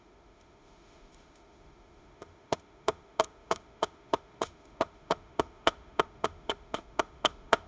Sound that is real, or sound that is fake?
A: fake